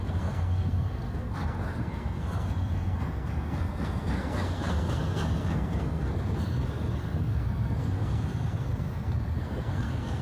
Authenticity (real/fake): fake